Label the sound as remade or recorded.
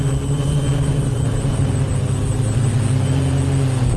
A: recorded